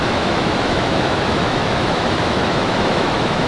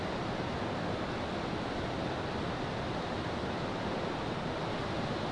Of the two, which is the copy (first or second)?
first